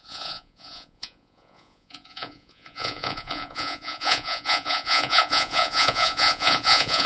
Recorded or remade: remade